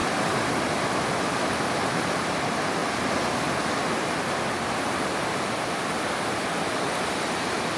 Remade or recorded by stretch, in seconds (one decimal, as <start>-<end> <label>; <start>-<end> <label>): 0.0-7.8 recorded